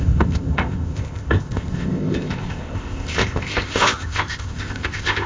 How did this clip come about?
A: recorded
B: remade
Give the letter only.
B